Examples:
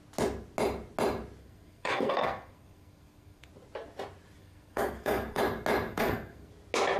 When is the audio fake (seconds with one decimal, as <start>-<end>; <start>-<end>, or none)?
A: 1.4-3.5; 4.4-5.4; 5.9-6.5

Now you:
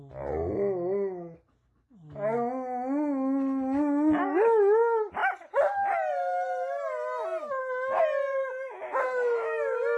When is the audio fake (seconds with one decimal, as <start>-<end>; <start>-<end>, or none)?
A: none

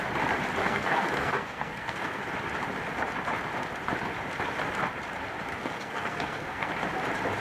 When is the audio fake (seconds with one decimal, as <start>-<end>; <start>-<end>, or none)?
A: 0.6-2.2; 5.5-6.7